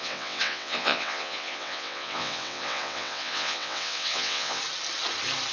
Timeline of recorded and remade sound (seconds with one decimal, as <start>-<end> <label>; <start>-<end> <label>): 0.0-4.6 remade; 4.6-5.5 recorded